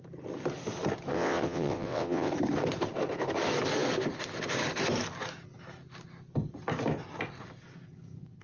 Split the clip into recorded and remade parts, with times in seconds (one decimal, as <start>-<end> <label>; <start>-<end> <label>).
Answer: 0.0-1.1 recorded; 1.1-2.3 remade; 2.3-8.4 recorded